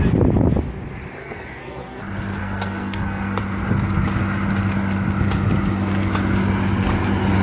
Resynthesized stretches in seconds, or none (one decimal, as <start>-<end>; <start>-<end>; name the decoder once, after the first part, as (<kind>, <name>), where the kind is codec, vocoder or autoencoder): 1.2-2.0 (codec, SNAC); 2.4-3.4